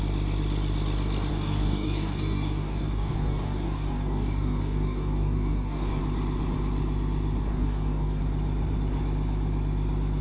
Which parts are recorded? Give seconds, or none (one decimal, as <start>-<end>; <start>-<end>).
0.0-1.3; 6.0-7.5; 8.2-10.2

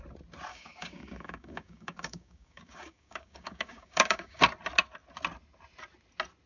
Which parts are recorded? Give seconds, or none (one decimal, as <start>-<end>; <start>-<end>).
0.0-0.5; 4.4-6.5

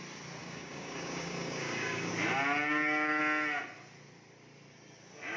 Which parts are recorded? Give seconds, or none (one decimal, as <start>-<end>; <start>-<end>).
0.0-0.4; 2.1-2.6; 3.2-5.4

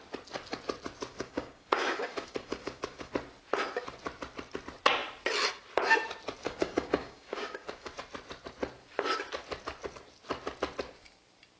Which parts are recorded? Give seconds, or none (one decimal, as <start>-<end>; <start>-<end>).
0.0-1.1; 3.1-6.4; 7.9-11.6

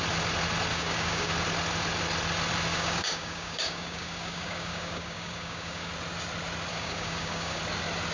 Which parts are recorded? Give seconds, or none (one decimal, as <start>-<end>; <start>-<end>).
0.0-0.7; 1.3-2.7; 5.9-6.7; 7.6-8.1

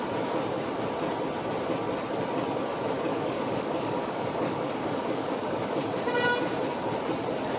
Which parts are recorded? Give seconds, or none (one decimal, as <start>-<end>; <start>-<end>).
0.0-3.1; 5.8-7.6